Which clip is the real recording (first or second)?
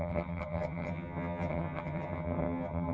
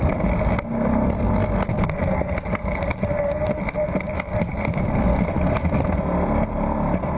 second